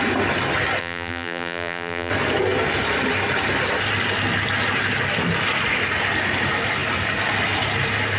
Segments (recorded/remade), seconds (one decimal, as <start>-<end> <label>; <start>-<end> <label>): 0.0-0.8 recorded; 0.8-2.1 remade; 2.1-8.2 recorded